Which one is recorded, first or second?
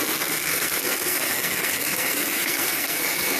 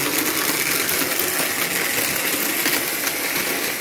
second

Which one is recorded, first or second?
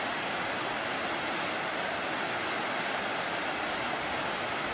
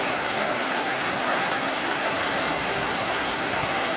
first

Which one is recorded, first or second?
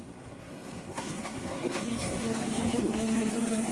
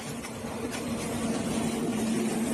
second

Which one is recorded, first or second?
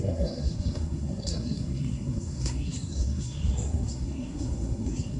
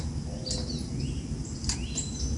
second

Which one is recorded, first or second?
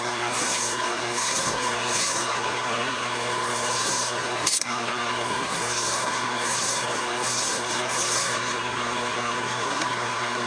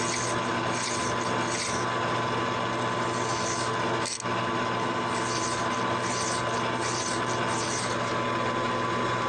second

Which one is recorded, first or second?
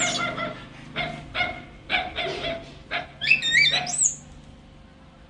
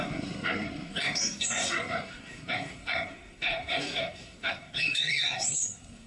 first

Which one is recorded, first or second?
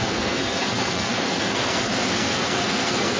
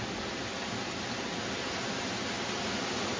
second